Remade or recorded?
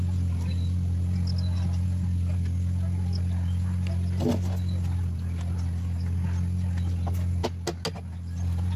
recorded